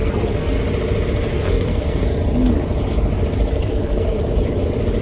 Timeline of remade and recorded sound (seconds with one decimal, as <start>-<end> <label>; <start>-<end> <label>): 0.0-0.6 remade; 0.6-1.3 recorded; 1.3-2.1 remade; 2.1-3.5 recorded; 3.5-4.2 remade; 4.2-5.0 recorded